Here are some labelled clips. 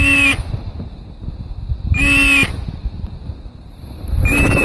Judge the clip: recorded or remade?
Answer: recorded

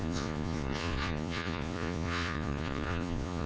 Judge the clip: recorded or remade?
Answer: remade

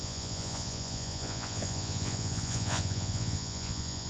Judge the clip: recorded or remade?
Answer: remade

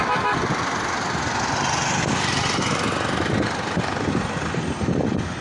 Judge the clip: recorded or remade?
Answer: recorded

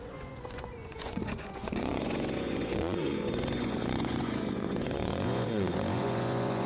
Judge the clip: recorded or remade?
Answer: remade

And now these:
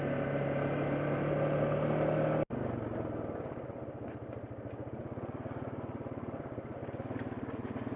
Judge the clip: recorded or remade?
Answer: recorded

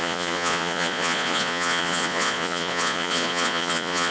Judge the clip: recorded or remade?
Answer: remade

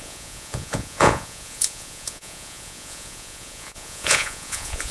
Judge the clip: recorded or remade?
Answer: remade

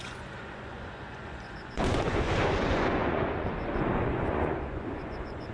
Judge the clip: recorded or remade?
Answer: remade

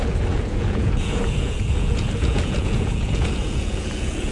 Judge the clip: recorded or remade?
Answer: remade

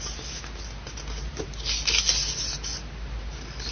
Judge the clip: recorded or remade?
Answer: recorded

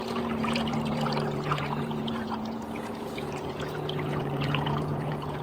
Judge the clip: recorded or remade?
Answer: remade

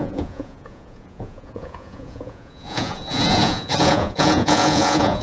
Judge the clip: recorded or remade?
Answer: remade